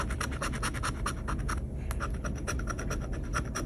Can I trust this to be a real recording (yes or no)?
yes